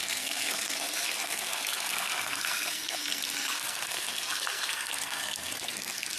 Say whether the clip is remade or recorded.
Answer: remade